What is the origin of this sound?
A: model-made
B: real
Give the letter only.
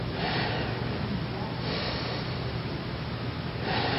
B